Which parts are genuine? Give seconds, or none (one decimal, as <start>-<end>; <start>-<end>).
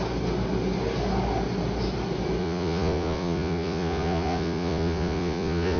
0.0-2.4